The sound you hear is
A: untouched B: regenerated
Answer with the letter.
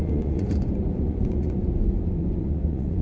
B